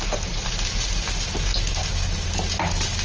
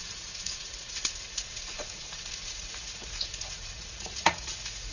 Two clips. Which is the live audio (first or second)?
first